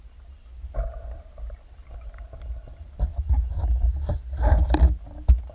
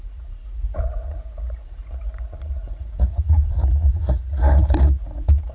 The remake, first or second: second